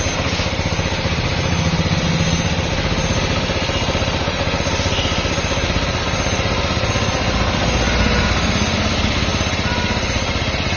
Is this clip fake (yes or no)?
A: no